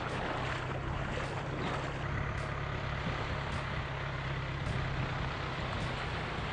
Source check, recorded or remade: recorded